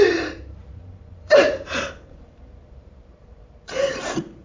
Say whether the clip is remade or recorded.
remade